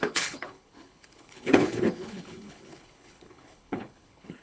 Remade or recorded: remade